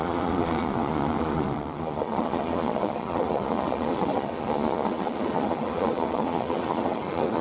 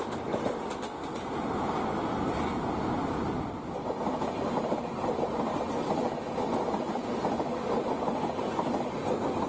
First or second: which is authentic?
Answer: second